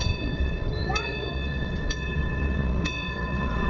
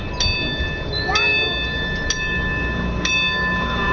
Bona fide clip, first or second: second